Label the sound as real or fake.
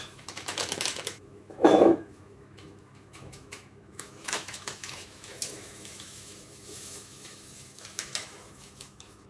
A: fake